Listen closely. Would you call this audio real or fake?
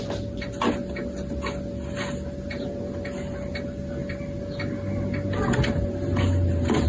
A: real